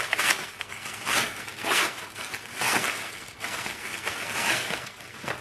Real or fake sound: fake